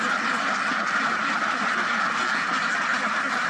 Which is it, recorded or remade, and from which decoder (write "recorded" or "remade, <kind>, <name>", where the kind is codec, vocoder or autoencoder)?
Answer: recorded